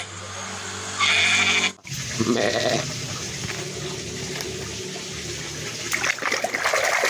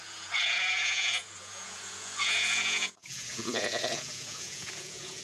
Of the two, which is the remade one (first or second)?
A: second